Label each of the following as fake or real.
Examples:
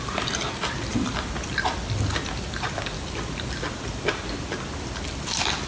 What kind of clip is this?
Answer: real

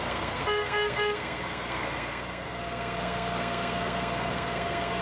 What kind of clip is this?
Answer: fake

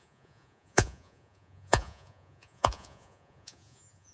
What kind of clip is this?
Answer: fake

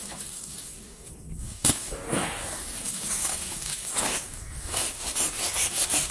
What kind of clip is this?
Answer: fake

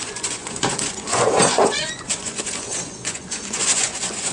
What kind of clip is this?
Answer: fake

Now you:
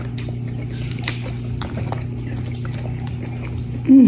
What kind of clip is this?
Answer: real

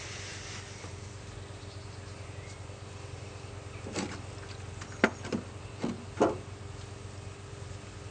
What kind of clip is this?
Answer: real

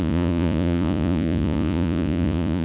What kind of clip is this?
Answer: fake